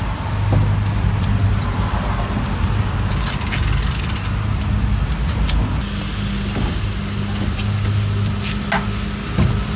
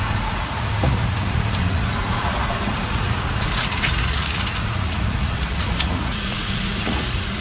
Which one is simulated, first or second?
second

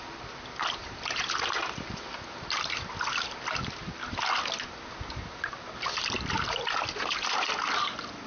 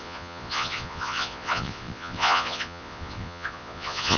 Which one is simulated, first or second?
second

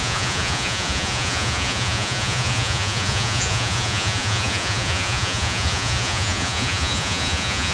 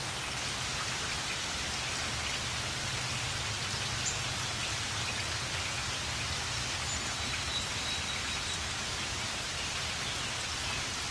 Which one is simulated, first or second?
first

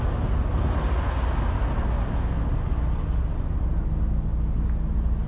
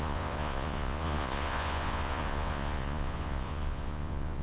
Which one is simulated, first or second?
second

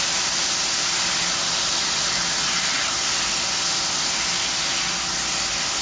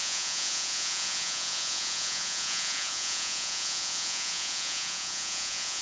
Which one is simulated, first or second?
second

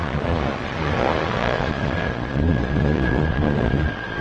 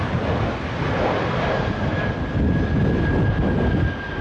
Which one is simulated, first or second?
first